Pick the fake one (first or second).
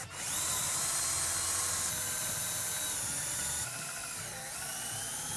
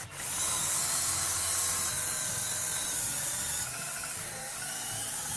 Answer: second